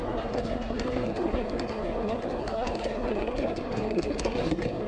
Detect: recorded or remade remade